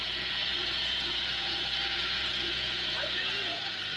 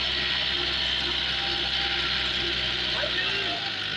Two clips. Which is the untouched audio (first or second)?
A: second